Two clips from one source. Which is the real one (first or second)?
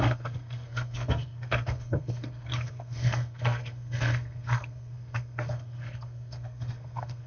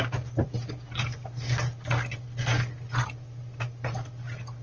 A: second